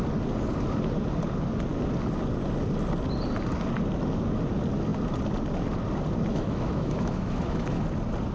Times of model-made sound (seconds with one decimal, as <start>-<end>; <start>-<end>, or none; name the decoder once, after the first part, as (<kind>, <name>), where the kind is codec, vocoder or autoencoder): 6.3-7.8 (autoencoder, DAC-VAE)